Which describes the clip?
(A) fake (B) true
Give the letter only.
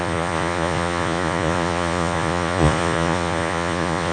A